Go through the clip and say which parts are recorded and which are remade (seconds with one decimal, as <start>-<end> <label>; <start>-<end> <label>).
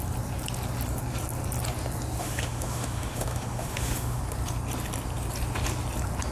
0.0-2.2 recorded; 2.2-4.2 remade; 4.2-6.3 recorded